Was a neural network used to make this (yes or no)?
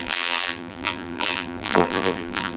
yes